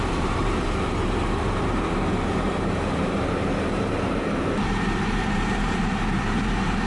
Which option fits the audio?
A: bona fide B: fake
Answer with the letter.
B